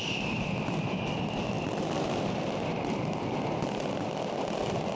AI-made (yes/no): no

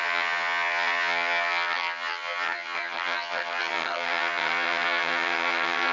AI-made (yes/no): yes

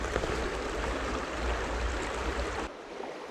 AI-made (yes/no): no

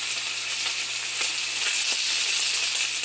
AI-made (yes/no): no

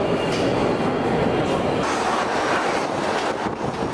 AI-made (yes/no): no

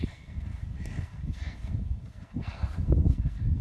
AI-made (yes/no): yes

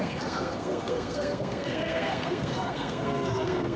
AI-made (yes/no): yes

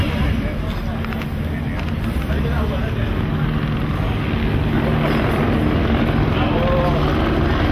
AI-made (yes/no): no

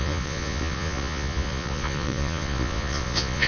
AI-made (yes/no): yes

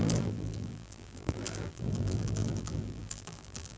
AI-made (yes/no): yes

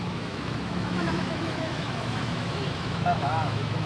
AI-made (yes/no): yes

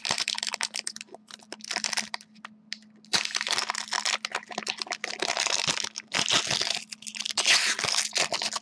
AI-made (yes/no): no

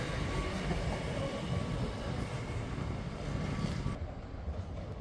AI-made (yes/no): no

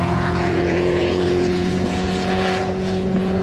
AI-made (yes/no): yes